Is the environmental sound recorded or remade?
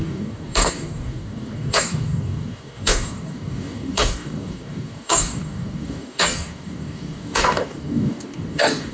remade